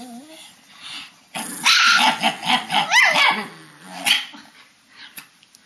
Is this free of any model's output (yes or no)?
yes